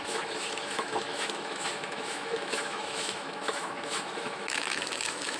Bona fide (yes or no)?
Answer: no